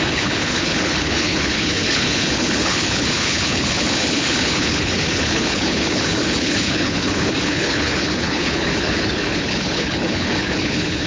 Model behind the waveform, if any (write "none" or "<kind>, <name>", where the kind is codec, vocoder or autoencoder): codec, HILCodec